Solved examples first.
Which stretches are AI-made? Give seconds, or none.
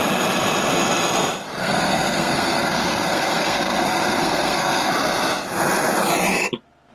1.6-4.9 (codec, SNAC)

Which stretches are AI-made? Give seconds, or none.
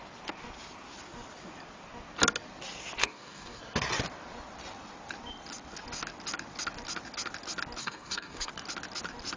3.0-3.6 (codec, DAC); 7.8-8.5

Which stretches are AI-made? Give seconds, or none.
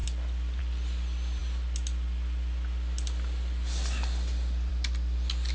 none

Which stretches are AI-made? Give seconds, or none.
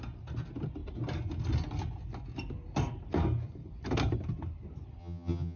5.0-5.6 (vocoder, HiFi-GAN)